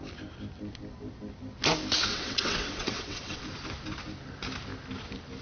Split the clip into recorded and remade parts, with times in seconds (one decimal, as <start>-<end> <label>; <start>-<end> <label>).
0.0-2.1 recorded; 2.1-3.4 remade; 3.4-5.4 recorded